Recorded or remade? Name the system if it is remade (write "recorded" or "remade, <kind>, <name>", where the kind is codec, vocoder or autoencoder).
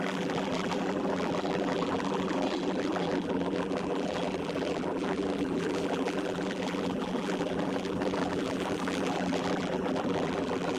remade, vocoder, BigVGAN v2